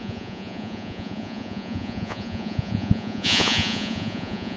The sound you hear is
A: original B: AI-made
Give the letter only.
B